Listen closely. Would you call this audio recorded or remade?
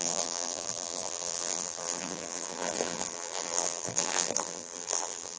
remade